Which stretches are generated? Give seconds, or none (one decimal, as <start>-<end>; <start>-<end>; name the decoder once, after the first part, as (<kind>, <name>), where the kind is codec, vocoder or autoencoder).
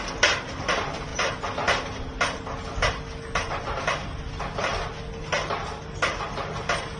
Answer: none